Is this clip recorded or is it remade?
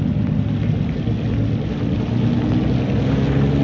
recorded